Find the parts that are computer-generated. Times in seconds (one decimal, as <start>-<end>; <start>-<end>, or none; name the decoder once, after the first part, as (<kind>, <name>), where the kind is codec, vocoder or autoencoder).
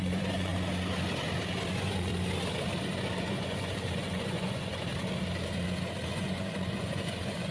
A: 0.0-0.5 (vocoder, Vocos); 1.7-2.1; 3.2-4.9; 6.1-7.5